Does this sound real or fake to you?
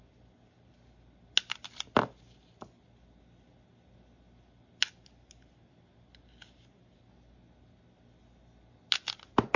real